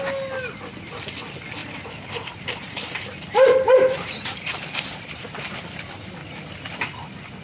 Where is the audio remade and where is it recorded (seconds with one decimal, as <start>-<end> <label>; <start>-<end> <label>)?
0.0-1.6 recorded; 1.6-6.0 remade; 6.0-7.4 recorded